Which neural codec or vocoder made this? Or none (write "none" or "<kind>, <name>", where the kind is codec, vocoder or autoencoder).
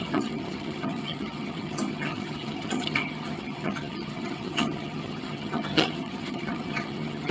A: vocoder, HiFi-GAN